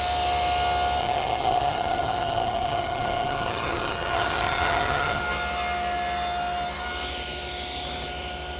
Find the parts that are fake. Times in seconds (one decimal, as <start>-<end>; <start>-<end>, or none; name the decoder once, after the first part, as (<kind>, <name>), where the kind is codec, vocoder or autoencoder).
1.0-5.2 (vocoder, HiFi-GAN)